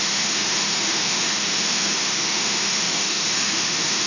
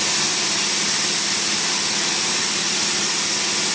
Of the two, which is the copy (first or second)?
first